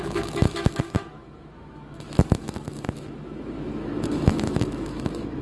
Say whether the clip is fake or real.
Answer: fake